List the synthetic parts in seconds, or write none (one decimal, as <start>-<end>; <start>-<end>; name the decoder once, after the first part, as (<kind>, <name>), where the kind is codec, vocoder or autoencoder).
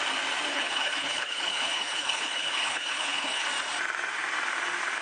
0.5-3.5 (codec, HILCodec)